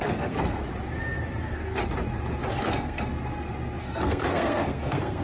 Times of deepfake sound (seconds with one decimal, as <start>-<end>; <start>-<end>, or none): 0.0-0.6; 1.4-1.8; 2.5-3.1; 3.8-5.2